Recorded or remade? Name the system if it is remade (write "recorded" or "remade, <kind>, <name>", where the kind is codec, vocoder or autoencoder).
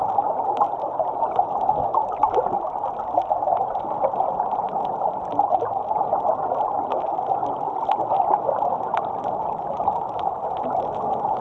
recorded